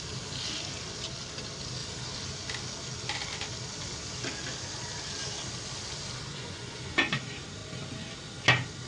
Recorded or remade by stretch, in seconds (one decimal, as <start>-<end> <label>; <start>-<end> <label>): 0.0-6.3 recorded; 6.3-7.0 remade; 7.0-8.9 recorded